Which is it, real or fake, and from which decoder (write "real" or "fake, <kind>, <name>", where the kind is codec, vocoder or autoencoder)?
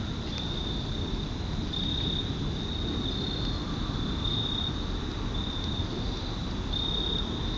real